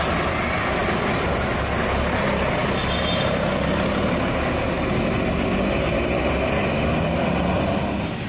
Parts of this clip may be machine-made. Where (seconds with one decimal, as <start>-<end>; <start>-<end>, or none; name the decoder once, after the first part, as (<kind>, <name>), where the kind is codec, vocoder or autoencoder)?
0.8-1.4 (vocoder, BigVGAN v2)